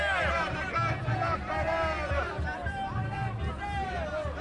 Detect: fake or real real